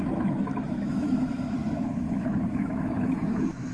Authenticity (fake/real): fake